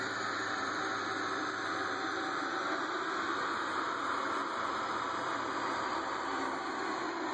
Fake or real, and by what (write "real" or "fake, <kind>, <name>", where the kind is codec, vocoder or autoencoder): real